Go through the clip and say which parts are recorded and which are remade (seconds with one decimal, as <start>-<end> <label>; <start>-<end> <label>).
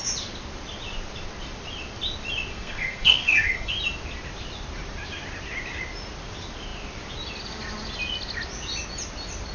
0.0-2.5 recorded; 2.5-3.7 remade; 3.7-9.5 recorded